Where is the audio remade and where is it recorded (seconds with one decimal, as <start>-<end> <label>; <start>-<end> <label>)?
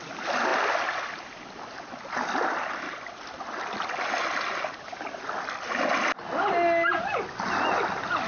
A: 0.0-8.3 recorded